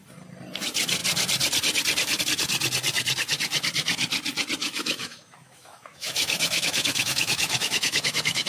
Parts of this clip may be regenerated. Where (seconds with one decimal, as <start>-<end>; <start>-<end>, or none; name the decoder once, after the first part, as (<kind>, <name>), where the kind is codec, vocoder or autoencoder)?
4.6-8.5 (autoencoder, DAC-VAE)